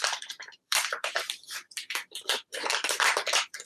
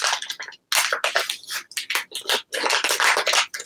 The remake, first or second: first